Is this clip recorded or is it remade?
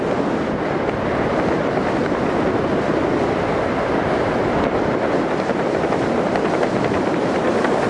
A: remade